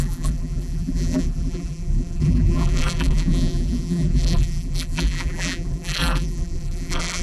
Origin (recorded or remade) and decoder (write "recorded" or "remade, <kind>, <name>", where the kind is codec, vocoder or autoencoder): remade, vocoder, BigVGAN v2